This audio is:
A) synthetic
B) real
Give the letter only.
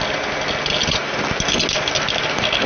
B